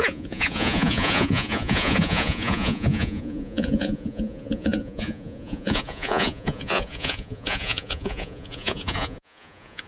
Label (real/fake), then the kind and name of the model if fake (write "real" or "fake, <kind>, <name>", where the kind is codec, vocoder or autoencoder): fake, vocoder, Vocos